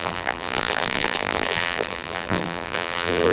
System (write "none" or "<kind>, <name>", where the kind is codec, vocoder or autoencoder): vocoder, BigVGAN v2